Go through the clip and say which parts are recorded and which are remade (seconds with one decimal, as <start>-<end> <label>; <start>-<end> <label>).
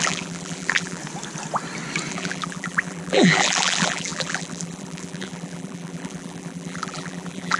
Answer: 0.0-1.0 remade; 1.0-2.1 recorded; 2.1-7.6 remade